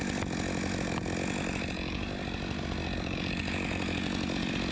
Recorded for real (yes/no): yes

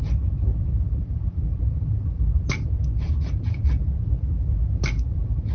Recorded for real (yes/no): yes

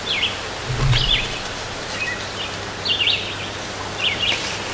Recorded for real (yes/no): yes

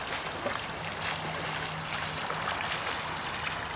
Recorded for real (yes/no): yes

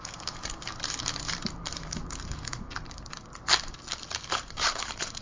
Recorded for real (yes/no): no